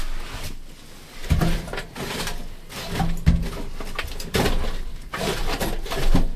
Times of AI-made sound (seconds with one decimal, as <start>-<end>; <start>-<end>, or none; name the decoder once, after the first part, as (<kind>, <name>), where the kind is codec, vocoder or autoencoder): 1.2-2.1 (vocoder, BigVGAN v2); 4.9-5.4